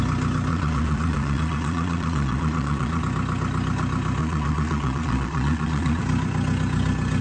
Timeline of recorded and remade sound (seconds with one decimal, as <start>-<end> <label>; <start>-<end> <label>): 0.0-0.5 recorded; 0.5-3.0 remade; 3.0-4.2 recorded; 4.2-6.0 remade; 6.0-7.2 recorded